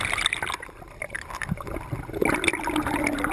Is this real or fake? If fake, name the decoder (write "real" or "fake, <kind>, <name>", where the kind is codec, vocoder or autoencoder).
real